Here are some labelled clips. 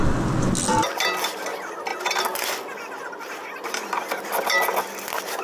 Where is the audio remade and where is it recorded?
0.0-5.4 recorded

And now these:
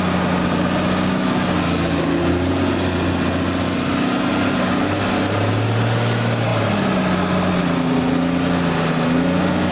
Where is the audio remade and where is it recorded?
0.0-6.5 recorded; 6.5-7.5 remade; 7.5-9.7 recorded

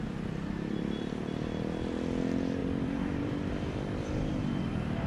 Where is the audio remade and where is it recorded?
0.0-2.6 recorded; 2.6-3.5 remade; 3.5-5.1 recorded

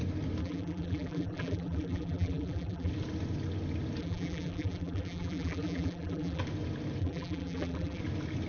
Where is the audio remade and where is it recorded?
0.0-0.4 recorded; 0.4-2.9 remade; 2.9-4.0 recorded; 4.0-6.4 remade; 6.4-7.0 recorded; 7.0-8.0 remade; 8.0-8.5 recorded

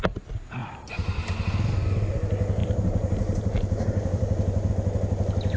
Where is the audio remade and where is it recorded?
0.0-0.6 recorded; 0.6-1.3 remade; 1.3-2.6 recorded; 2.6-4.7 remade; 4.7-5.6 recorded

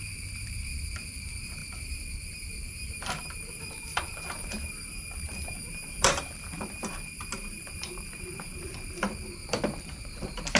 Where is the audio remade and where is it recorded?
0.0-10.6 remade

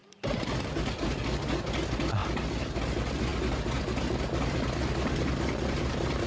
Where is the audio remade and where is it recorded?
0.0-0.7 remade; 0.7-6.3 recorded